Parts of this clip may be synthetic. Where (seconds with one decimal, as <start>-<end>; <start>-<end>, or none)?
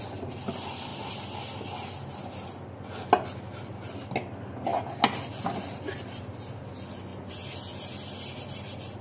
none